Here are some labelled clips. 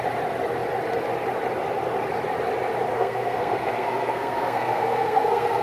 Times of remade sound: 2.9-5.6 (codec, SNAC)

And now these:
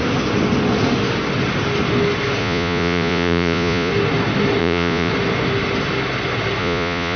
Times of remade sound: 2.4-3.9 (vocoder, Vocos); 4.6-5.1; 6.6-7.2

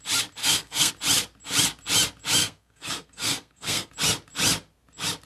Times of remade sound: 0.4-0.9 (codec, SNAC); 2.4-3.9

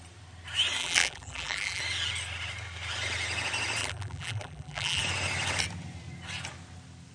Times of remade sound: 0.8-1.8 (vocoder, BigVGAN v2); 3.8-5.0